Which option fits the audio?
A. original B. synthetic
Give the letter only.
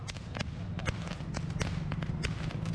A